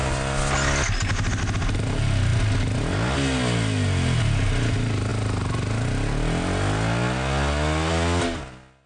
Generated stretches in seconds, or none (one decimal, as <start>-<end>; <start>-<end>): none